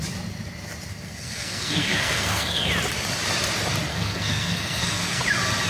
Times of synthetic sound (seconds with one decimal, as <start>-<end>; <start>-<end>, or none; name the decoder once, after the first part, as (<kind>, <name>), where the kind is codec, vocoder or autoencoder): 0.9-2.7 (codec, SNAC); 3.9-5.2